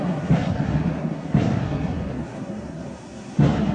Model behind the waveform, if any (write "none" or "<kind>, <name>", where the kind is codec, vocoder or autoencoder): codec, SNAC